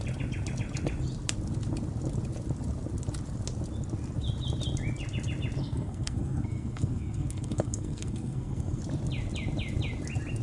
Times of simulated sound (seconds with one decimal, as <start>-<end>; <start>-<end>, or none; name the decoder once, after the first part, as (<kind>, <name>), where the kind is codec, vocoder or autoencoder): 5.6-8.8 (codec, SNAC)